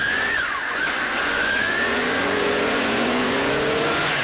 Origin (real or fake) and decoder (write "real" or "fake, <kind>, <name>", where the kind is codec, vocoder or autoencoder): fake, vocoder, Vocos